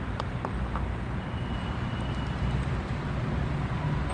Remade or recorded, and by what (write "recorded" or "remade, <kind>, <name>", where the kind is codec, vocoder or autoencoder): recorded